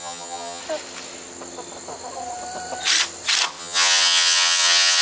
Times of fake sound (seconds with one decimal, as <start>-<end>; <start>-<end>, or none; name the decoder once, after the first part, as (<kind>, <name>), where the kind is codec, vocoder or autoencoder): 0.0-0.6 (vocoder, HiFi-GAN); 3.6-5.0